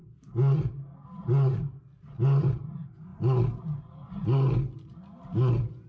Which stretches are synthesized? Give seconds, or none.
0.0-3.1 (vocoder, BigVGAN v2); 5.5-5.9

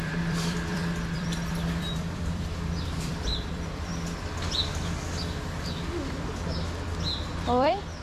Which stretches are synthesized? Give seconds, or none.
0.0-3.9 (vocoder, BigVGAN v2); 7.3-8.0

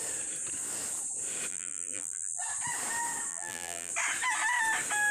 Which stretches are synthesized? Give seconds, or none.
1.5-2.4 (vocoder, BigVGAN v2); 3.3-3.9

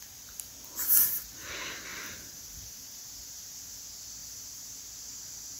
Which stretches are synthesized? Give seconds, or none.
1.9-3.8 (vocoder, BigVGAN v2); 4.2-4.8

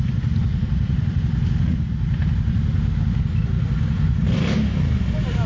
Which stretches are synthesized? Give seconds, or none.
0.4-1.2 (vocoder, BigVGAN v2); 4.2-4.8